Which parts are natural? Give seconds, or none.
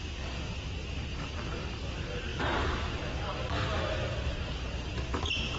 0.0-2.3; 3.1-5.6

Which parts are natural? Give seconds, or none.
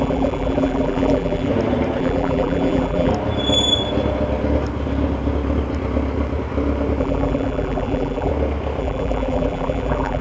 1.5-2.0; 3.1-7.0; 8.3-8.8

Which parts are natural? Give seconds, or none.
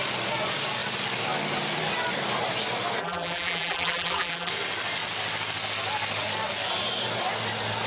0.0-3.0; 4.5-7.9